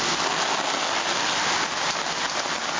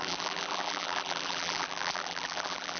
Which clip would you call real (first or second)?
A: first